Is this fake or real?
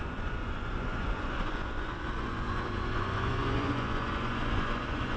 fake